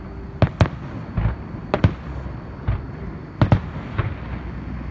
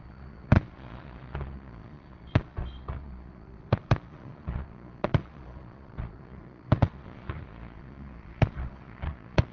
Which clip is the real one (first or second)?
first